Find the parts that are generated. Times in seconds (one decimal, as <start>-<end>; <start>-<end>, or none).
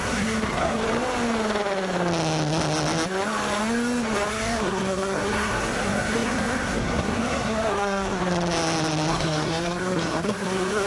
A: 0.0-0.8; 4.3-8.2; 9.1-10.9